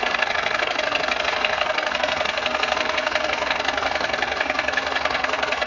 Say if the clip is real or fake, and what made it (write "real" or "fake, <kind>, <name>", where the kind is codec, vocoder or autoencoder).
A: fake, codec, SNAC